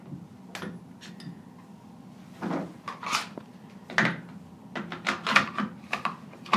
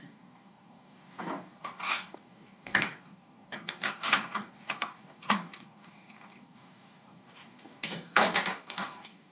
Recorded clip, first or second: first